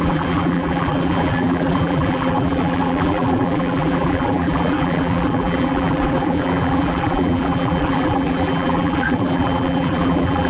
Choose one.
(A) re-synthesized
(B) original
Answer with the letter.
A